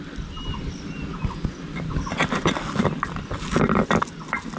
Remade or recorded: recorded